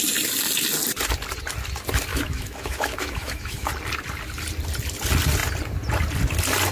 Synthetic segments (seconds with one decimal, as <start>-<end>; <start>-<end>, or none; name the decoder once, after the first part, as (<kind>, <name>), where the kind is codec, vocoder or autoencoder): 2.1-3.7 (autoencoder, DAC-VAE)